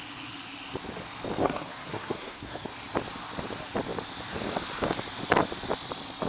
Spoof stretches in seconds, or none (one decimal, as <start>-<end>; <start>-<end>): 1.4-2.7